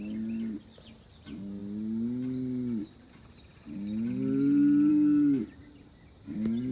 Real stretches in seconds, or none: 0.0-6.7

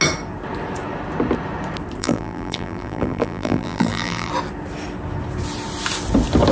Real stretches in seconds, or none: 0.0-2.0; 4.3-6.5

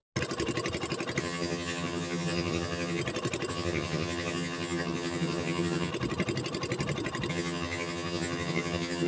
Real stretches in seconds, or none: 0.0-1.2; 3.0-3.5; 5.9-7.3

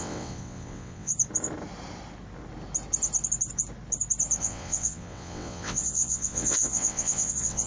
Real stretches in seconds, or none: 1.1-4.4

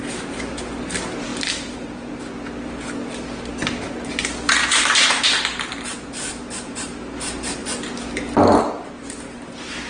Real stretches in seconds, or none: 0.0-1.3; 2.2-4.6; 5.2-9.9

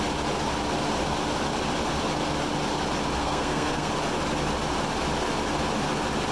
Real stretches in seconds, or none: 0.0-3.2; 3.9-6.3

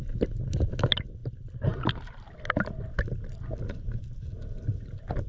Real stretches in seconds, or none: 0.0-5.3

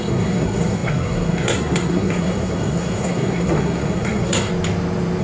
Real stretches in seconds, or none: 4.5-5.2